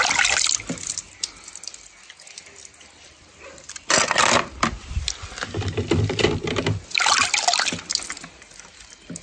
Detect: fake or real real